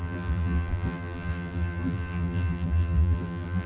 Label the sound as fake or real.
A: fake